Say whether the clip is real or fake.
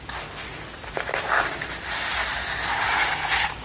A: real